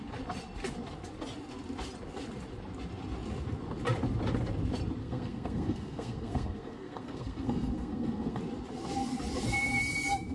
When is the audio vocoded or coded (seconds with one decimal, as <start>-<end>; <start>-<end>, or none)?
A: 5.0-8.4